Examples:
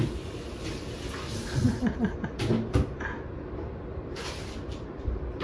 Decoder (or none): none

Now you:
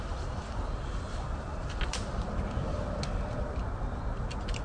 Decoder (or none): none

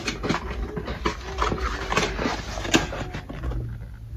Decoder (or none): none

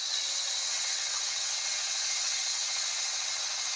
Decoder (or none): vocoder, WaveNeXt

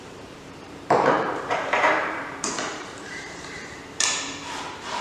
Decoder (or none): vocoder, BigVGAN v2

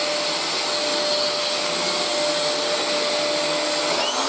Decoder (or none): none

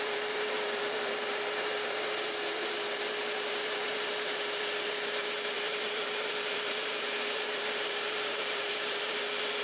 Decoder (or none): vocoder, BigVGAN v2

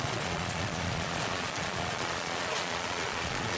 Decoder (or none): vocoder, Vocos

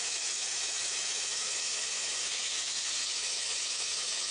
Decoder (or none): autoencoder, DAC-VAE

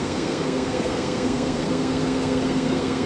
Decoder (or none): codec, SNAC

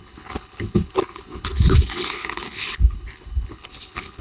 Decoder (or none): codec, HILCodec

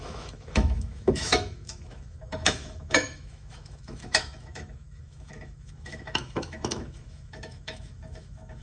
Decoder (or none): autoencoder, DAC-VAE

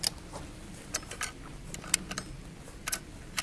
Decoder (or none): none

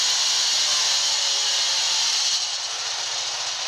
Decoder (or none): none